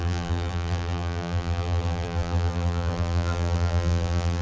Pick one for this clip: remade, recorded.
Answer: remade